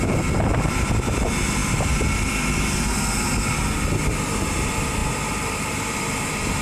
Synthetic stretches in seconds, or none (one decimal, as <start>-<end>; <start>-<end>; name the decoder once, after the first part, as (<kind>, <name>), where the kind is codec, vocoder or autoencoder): 5.0-5.9 (vocoder, BigVGAN v2)